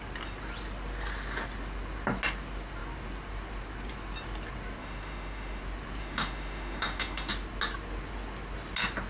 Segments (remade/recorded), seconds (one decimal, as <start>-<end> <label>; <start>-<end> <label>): 0.0-4.8 recorded; 4.8-5.6 remade; 5.6-6.0 recorded; 6.0-7.3 remade; 7.3-9.1 recorded